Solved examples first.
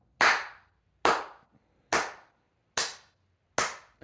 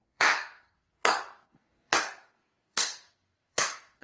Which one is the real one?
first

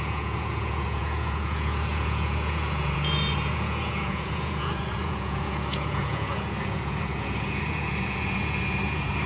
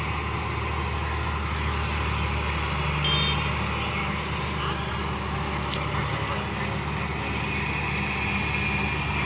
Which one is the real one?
second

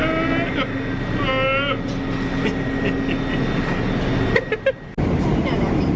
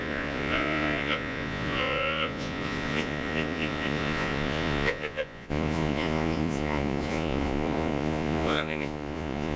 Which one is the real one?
first